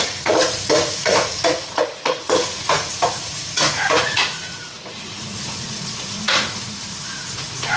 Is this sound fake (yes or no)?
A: yes